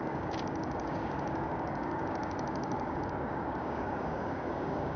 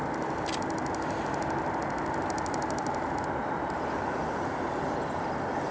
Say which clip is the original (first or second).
second